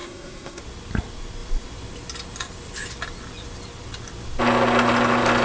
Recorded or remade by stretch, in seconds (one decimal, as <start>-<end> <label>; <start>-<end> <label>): 0.0-0.6 remade; 0.6-5.4 recorded